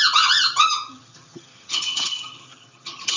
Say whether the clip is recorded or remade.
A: remade